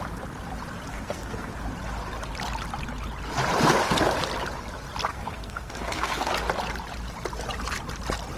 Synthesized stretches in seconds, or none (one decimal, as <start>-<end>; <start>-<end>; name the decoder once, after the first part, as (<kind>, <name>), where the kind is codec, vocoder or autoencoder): 0.9-1.5 (codec, SNAC); 5.1-6.3